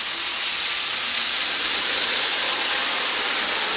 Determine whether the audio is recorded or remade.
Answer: recorded